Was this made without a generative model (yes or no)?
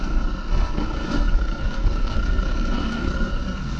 no